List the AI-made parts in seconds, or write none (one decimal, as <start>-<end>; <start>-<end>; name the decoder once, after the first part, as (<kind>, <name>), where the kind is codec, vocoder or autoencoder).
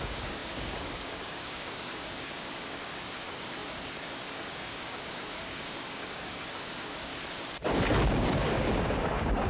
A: 0.0-7.1 (codec, DAC); 8.1-9.5